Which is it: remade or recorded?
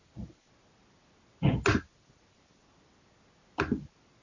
recorded